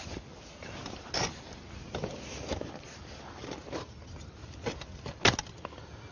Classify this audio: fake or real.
real